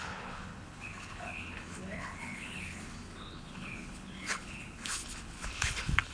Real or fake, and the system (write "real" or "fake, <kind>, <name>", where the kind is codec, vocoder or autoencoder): fake, codec, HILCodec